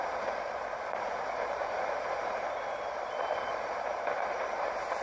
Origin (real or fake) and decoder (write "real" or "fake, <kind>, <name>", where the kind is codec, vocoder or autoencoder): fake, vocoder, BigVGAN v2